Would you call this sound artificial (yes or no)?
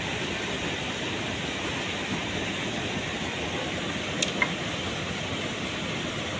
no